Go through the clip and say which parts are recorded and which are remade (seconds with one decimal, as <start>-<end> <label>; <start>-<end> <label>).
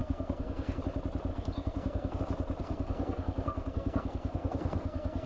0.0-0.8 remade; 0.8-1.3 recorded; 1.3-2.2 remade; 2.2-2.6 recorded; 2.6-5.3 remade